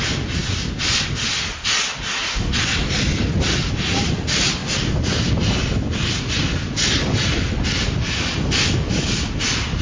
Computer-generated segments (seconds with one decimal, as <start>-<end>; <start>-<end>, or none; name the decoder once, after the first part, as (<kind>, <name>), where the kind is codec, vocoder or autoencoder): none